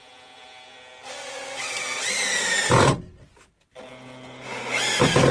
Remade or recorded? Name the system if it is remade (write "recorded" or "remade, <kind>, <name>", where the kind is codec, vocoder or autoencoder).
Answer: recorded